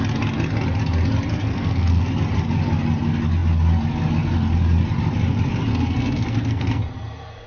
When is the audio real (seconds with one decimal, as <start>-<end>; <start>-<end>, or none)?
0.0-1.4; 2.1-5.7; 6.8-7.5